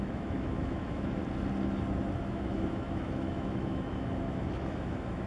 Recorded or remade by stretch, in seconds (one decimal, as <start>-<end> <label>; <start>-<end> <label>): 0.0-1.2 remade; 1.2-2.3 recorded; 2.3-5.3 remade